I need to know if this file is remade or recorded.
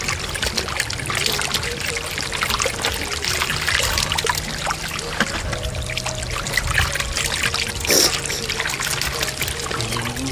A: recorded